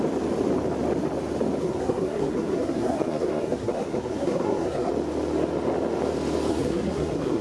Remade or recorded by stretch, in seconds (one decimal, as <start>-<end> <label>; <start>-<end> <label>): 0.0-1.6 recorded; 1.6-4.9 remade; 4.9-6.5 recorded; 6.5-7.4 remade